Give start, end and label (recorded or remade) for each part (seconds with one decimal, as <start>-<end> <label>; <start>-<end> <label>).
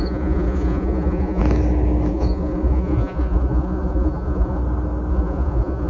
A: 0.0-1.4 remade; 1.4-2.1 recorded; 2.1-4.6 remade; 4.6-5.1 recorded; 5.1-5.9 remade